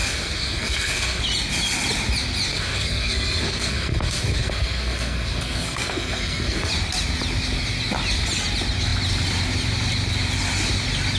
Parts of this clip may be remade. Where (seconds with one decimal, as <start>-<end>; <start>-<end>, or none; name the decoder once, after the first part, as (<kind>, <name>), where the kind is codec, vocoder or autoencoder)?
0.0-1.2 (codec, SNAC); 2.5-6.7